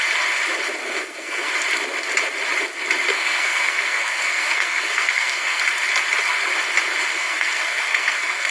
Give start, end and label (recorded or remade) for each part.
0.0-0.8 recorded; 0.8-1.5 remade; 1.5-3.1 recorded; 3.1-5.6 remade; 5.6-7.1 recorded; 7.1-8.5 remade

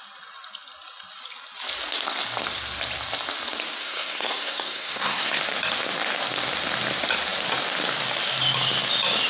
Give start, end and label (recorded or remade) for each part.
0.0-3.8 recorded; 3.8-5.4 remade; 5.4-9.3 recorded

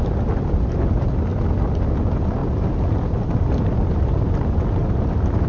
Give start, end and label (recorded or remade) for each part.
0.0-5.5 recorded

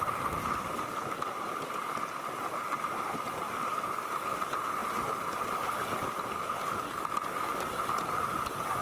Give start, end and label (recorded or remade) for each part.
0.0-8.8 recorded

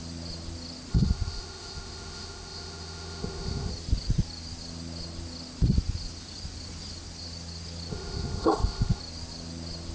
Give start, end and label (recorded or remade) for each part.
0.0-0.9 recorded; 0.9-3.7 remade; 3.7-7.9 recorded; 7.9-9.0 remade; 9.0-9.9 recorded

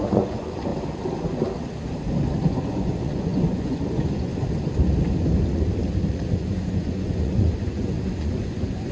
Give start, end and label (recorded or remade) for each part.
0.0-0.7 remade; 0.7-2.5 recorded; 2.5-4.3 remade; 4.3-6.1 recorded; 6.1-8.9 remade

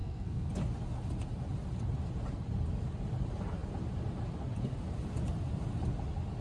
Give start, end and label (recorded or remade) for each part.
0.0-0.5 remade; 0.5-6.4 recorded

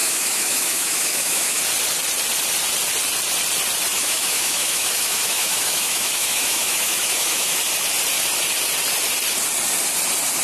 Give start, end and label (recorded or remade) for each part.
0.0-1.6 remade; 1.6-3.9 recorded; 3.9-7.6 remade; 7.6-10.4 recorded